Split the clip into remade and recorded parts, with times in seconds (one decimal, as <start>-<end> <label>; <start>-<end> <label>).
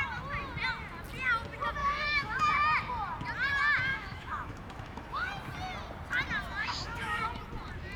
0.0-1.8 recorded; 1.8-2.4 remade; 2.4-3.9 recorded; 3.9-5.3 remade; 5.3-6.6 recorded; 6.6-7.2 remade; 7.2-8.0 recorded